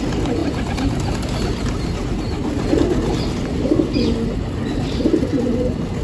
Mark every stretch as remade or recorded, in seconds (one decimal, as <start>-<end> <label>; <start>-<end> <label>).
0.0-6.0 recorded

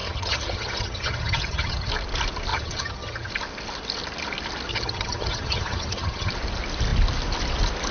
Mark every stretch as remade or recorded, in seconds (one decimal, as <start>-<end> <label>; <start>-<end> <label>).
0.0-1.9 remade; 1.9-2.5 recorded; 2.5-3.3 remade; 3.3-4.7 recorded; 4.7-6.3 remade; 6.3-7.9 recorded

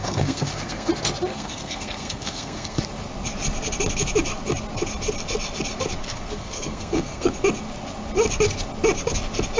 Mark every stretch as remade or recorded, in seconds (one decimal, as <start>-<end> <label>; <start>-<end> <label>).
0.0-0.9 remade; 0.9-1.3 recorded; 1.3-2.8 remade; 2.8-6.0 recorded; 6.0-7.3 remade; 7.3-9.6 recorded

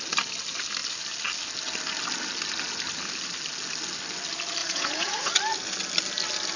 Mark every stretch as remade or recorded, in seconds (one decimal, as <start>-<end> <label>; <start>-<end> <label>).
0.0-4.6 recorded; 4.6-5.3 remade; 5.3-6.6 recorded

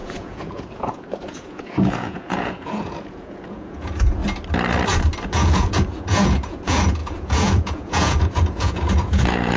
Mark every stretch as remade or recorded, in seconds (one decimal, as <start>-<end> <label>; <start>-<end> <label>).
0.0-4.2 remade; 4.2-5.2 recorded; 5.2-9.6 remade

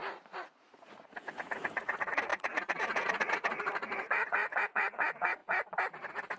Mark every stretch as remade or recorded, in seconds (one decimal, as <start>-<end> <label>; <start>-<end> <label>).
0.0-5.4 remade; 5.4-6.4 recorded

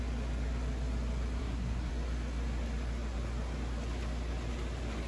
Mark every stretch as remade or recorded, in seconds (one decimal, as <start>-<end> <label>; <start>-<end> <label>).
0.0-1.4 recorded; 1.4-1.9 remade; 1.9-5.1 recorded

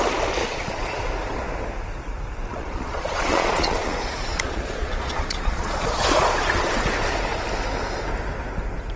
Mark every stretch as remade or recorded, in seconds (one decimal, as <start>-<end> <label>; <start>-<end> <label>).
0.0-0.4 recorded; 0.4-1.0 remade; 1.0-2.5 recorded; 2.5-6.7 remade; 6.7-9.0 recorded